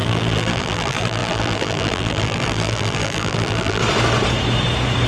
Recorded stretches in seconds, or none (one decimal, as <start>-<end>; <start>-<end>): 3.8-5.1